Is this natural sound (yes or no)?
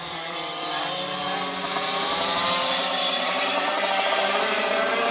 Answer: no